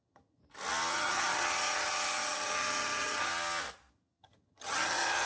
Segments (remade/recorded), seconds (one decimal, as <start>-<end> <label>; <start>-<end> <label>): 0.0-0.4 remade; 0.4-0.9 recorded; 0.9-3.3 remade; 3.3-3.9 recorded; 3.9-5.3 remade